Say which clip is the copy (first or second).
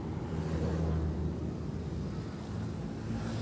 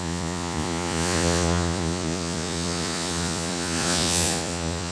second